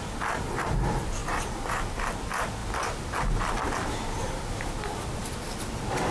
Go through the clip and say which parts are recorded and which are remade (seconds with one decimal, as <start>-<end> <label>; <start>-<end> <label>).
0.0-6.1 recorded

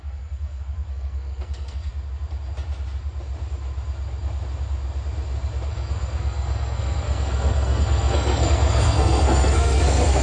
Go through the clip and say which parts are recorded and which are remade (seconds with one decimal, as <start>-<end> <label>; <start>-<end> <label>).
0.0-1.9 remade; 1.9-5.7 recorded; 5.7-10.2 remade